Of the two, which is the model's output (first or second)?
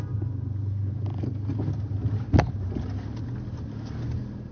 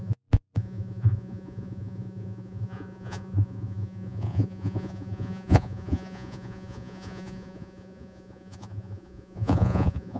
second